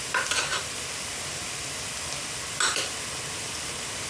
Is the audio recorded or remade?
recorded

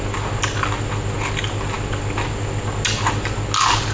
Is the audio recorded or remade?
recorded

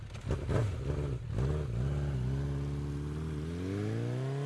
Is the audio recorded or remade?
recorded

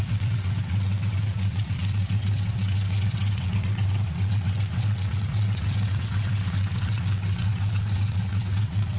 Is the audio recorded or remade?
remade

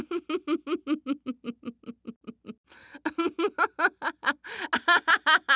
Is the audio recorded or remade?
recorded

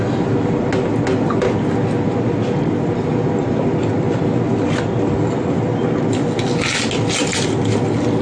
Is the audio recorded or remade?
recorded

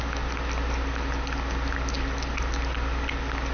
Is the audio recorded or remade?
recorded